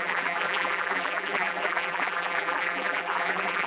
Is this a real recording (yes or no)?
no